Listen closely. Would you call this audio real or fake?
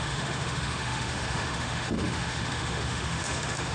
fake